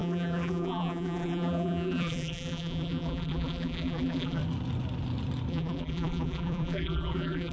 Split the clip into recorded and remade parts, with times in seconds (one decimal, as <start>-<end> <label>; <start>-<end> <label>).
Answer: 0.0-4.4 remade; 4.4-5.5 recorded; 5.5-7.5 remade